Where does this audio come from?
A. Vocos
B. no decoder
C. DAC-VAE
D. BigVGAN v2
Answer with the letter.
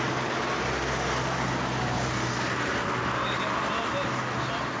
B